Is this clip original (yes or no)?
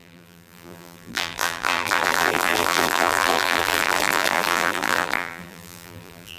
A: no